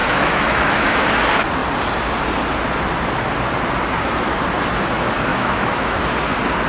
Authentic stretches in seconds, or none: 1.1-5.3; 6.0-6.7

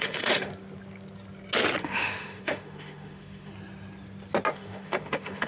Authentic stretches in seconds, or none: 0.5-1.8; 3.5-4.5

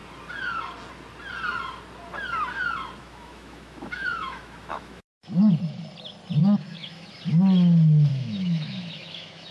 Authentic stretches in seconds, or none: 0.0-3.0; 5.5-6.4; 7.1-8.1

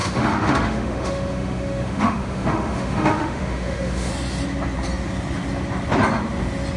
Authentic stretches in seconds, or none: 4.1-6.8